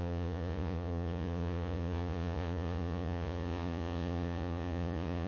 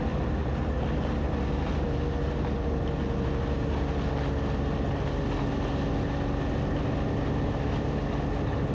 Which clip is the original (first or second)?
second